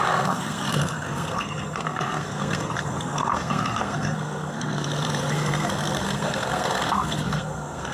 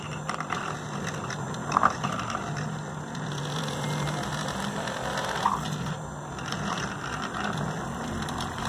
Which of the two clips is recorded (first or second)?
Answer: second